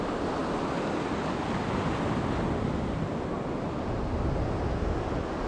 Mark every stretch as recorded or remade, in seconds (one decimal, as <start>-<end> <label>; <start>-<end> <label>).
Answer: 0.0-5.5 recorded

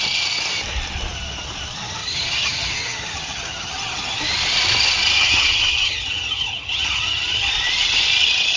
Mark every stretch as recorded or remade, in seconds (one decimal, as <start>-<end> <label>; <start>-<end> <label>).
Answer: 0.0-2.0 recorded; 2.0-4.2 remade; 4.2-5.2 recorded; 5.2-7.5 remade; 7.5-8.6 recorded

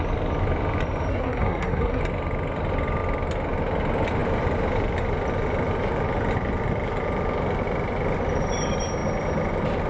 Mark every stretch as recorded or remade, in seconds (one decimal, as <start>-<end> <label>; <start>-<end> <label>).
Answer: 0.0-1.1 recorded; 1.1-2.0 remade; 2.0-9.9 recorded